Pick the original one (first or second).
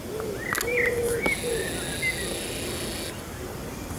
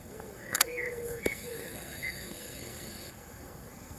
first